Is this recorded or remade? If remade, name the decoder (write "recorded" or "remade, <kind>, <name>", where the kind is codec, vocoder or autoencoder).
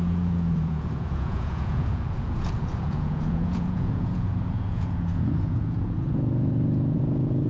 remade, vocoder, Vocos